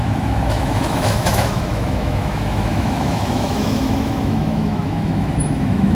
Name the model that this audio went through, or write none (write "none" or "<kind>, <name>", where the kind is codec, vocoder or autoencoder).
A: autoencoder, DAC-VAE